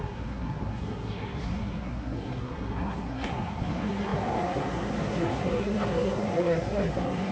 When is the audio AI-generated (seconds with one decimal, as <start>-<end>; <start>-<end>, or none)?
0.0-7.3